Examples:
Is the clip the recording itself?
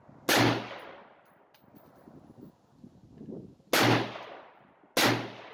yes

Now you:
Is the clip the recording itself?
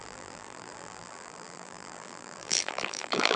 no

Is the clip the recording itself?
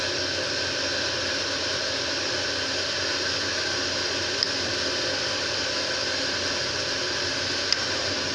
yes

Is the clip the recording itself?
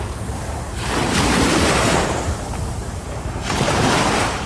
no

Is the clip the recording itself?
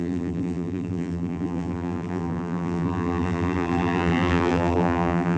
no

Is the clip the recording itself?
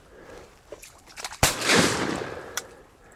no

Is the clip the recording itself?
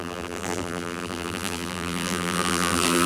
no